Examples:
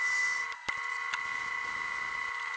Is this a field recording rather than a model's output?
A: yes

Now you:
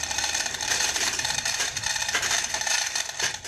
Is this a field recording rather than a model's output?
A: no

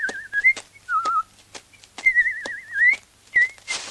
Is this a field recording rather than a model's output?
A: yes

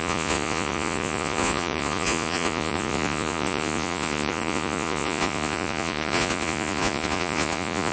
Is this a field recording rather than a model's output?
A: no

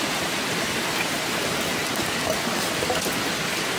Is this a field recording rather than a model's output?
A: yes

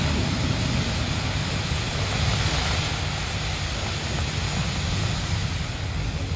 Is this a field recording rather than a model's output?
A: yes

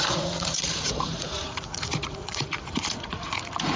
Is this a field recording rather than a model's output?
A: no